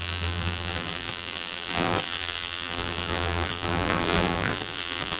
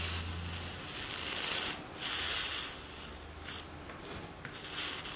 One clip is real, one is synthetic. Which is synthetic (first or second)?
first